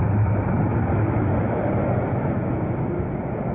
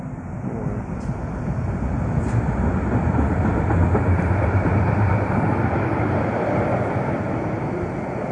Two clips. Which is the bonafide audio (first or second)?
first